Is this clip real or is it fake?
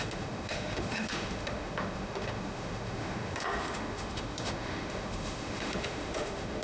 fake